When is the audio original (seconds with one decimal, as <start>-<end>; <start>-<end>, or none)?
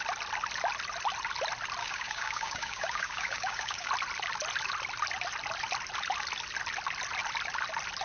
0.0-1.8; 3.9-8.0